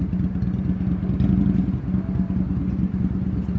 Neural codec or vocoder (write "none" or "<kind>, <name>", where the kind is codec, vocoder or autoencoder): none